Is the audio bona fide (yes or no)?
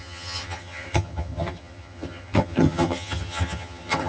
no